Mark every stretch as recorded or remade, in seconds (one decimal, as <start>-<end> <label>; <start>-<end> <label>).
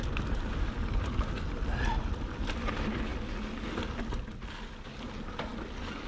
0.0-6.1 recorded